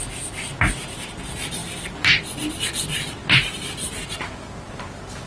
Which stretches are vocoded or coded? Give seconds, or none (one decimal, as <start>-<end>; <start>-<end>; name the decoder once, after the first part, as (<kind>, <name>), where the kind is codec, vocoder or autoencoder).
none